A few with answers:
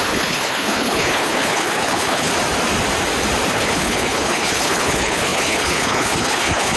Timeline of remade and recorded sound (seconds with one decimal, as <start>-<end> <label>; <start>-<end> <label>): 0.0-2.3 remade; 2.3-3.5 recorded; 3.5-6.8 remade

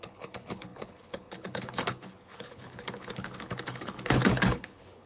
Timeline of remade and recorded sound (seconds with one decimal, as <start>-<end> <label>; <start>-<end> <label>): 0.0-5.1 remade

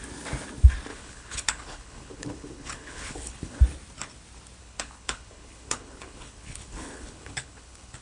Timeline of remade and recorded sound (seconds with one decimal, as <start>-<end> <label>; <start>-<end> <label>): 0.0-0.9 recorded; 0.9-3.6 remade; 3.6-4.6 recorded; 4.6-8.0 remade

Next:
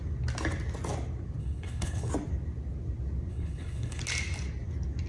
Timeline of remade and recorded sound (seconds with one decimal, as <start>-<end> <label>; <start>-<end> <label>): 0.0-1.4 recorded; 1.4-2.1 remade; 2.1-3.3 recorded; 3.3-4.0 remade; 4.0-5.1 recorded

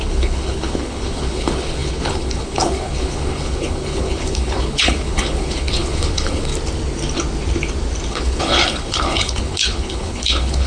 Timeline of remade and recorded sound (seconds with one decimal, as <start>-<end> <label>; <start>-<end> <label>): 0.0-6.5 remade; 6.5-8.1 recorded; 8.1-10.7 remade